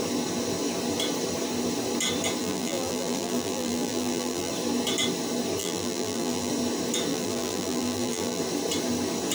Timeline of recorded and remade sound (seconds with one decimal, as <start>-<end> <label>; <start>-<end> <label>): 0.0-2.4 recorded; 2.4-4.5 remade; 4.5-5.6 recorded; 5.6-6.5 remade; 6.5-7.1 recorded; 7.1-8.4 remade; 8.4-9.3 recorded